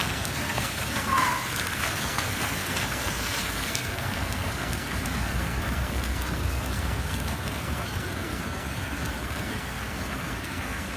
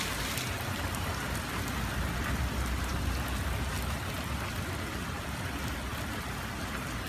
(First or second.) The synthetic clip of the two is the first